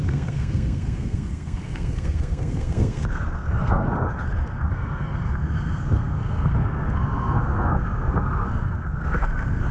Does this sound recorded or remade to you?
remade